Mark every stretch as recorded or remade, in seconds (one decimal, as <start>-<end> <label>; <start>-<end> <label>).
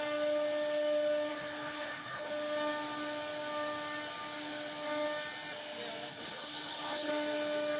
0.0-1.3 recorded; 1.3-2.3 remade; 2.3-6.1 recorded; 6.1-7.1 remade; 7.1-7.8 recorded